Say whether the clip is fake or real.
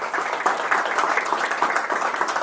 real